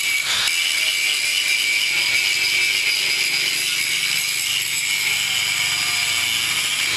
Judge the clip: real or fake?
real